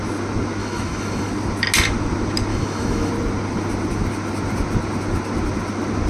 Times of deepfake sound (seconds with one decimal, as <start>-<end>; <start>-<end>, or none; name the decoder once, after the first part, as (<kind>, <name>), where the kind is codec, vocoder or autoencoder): 0.6-1.3 (autoencoder, DAC-VAE); 2.5-3.1